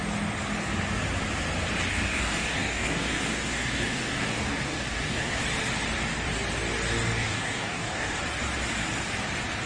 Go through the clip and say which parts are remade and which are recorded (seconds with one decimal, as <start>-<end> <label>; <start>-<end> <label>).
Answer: 0.0-1.9 recorded; 1.9-5.4 remade; 5.4-7.2 recorded; 7.2-8.2 remade; 8.2-9.7 recorded